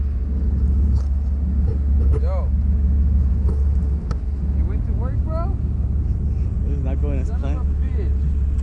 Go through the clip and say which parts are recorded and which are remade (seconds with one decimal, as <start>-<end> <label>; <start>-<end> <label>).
0.0-7.3 recorded; 7.3-7.9 remade; 7.9-8.6 recorded